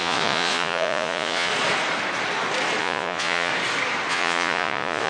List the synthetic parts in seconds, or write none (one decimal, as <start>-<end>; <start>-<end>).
0.0-1.5; 2.8-3.5; 4.1-5.1